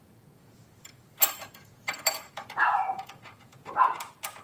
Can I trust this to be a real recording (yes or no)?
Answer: no